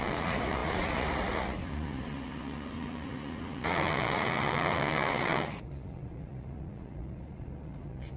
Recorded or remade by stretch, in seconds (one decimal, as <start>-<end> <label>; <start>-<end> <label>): 0.0-8.2 remade